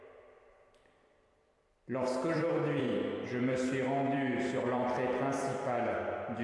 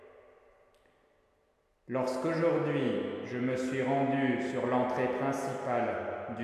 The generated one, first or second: first